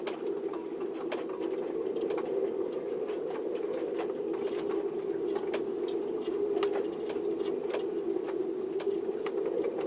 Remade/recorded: recorded